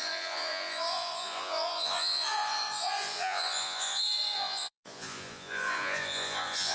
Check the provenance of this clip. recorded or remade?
remade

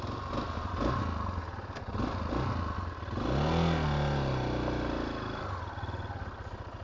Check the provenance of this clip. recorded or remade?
recorded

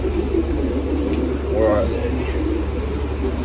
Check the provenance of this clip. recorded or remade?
recorded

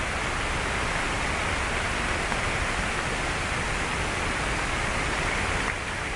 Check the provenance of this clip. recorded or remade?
recorded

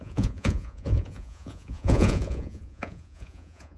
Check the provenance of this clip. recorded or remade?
remade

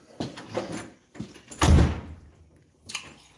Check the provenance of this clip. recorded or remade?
recorded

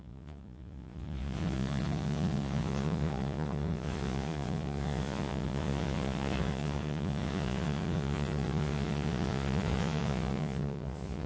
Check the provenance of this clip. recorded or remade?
remade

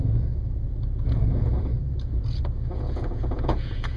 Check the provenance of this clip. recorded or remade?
remade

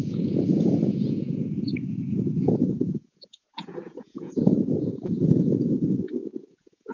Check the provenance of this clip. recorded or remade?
remade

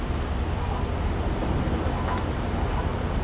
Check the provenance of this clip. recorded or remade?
recorded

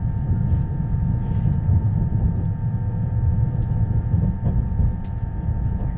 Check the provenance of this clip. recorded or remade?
recorded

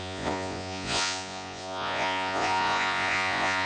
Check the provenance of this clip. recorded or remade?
remade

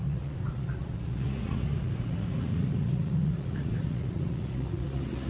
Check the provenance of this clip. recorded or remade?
remade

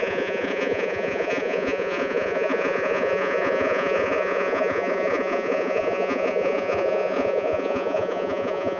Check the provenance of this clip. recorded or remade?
remade